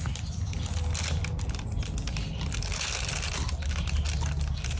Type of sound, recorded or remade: recorded